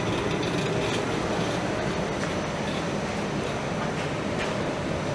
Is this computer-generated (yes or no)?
no